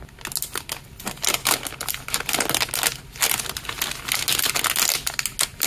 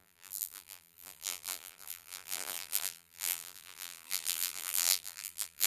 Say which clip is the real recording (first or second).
first